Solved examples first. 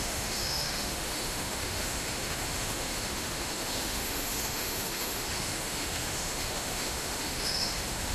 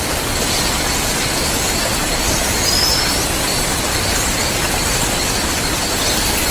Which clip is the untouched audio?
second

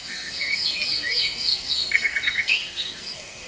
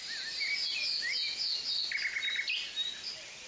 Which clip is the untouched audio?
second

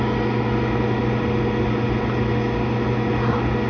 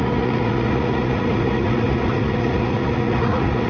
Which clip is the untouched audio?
first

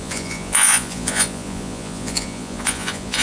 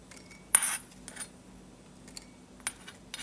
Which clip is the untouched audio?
second